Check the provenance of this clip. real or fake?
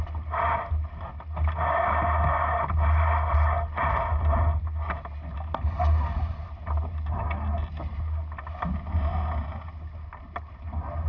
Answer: real